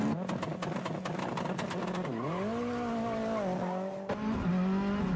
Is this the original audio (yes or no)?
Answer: yes